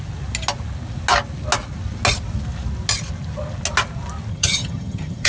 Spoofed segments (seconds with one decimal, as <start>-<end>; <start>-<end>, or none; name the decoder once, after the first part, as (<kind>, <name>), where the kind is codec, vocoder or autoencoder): 4.3-5.3 (vocoder, HiFi-GAN)